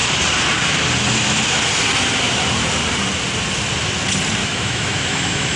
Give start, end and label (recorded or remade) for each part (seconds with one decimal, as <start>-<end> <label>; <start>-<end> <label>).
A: 0.0-4.4 recorded; 4.4-5.6 remade